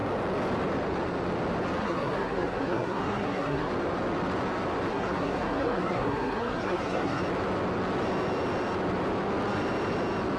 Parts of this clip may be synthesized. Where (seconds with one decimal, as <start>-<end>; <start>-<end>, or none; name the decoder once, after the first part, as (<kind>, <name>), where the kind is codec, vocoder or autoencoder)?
1.8-3.7 (codec, SNAC); 4.9-7.2